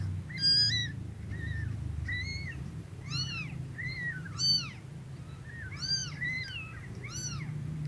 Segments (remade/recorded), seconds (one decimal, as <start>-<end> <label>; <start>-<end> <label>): 0.0-2.3 recorded; 2.3-4.4 remade; 4.4-6.0 recorded; 6.0-7.9 remade